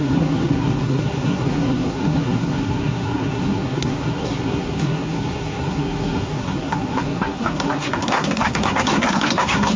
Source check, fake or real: fake